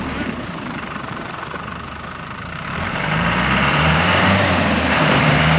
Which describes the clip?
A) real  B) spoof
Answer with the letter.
B